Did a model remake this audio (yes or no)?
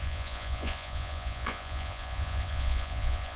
yes